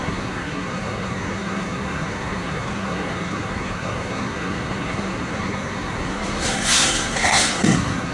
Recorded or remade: remade